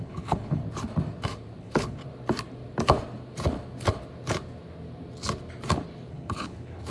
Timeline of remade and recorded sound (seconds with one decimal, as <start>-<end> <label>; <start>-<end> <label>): 0.0-0.6 remade; 0.6-1.6 recorded; 1.6-2.0 remade; 2.0-6.1 recorded; 6.1-6.9 remade